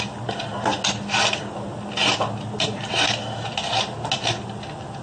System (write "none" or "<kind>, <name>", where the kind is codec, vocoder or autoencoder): none